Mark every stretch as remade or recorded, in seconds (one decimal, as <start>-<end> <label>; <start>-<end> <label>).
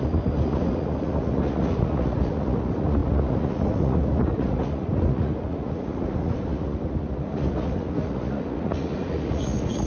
0.0-9.9 remade